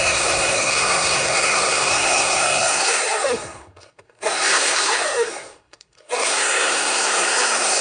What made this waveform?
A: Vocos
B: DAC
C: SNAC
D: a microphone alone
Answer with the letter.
C